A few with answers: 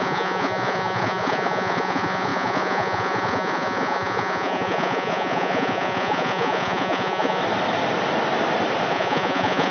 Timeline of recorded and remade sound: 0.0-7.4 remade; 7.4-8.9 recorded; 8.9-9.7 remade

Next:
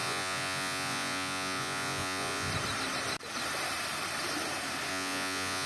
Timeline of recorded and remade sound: 0.0-2.5 remade; 2.5-4.9 recorded; 4.9-5.7 remade

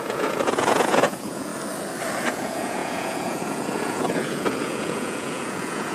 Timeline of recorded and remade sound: 0.0-1.5 remade; 1.5-2.3 recorded; 2.3-5.9 remade

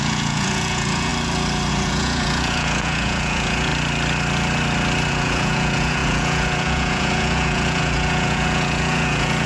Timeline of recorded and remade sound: 0.0-1.1 remade; 1.1-1.7 recorded; 1.7-3.7 remade; 3.7-5.1 recorded; 5.1-9.5 remade

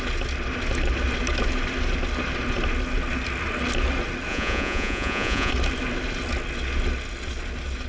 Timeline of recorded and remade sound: 0.0-4.3 recorded; 4.3-5.5 remade; 5.5-7.9 recorded

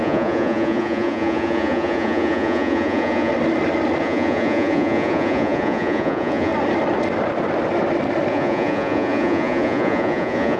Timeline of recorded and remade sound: 0.0-3.3 remade; 3.3-4.0 recorded; 4.0-6.5 remade; 6.5-8.3 recorded; 8.3-10.6 remade